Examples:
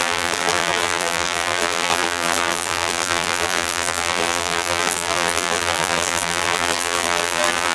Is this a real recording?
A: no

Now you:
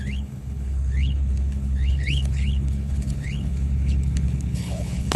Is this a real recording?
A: no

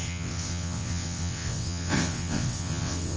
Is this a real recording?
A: no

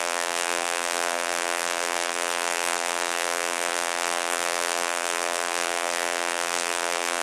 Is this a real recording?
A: no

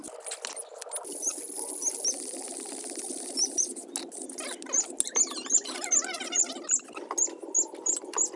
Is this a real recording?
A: yes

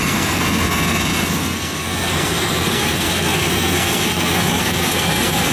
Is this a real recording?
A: no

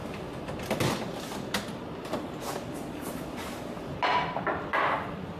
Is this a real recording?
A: yes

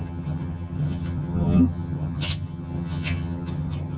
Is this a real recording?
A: no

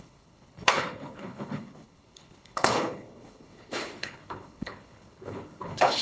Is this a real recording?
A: no